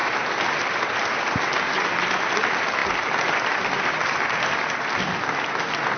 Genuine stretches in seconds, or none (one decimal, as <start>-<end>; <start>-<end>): 1.2-6.0